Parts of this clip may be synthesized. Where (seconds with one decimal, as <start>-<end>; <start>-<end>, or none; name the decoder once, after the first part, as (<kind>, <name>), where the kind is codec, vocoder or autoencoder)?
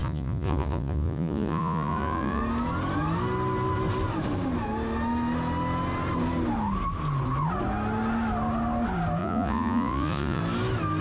0.0-2.4 (vocoder, Vocos); 9.2-10.4